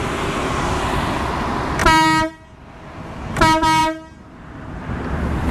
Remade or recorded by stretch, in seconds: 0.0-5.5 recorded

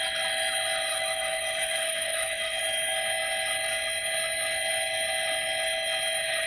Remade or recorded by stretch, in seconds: 0.0-0.9 recorded; 0.9-2.6 remade; 2.6-6.5 recorded

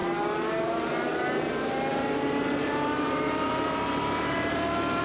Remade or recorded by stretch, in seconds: 0.0-1.4 remade; 1.4-1.9 recorded; 1.9-5.0 remade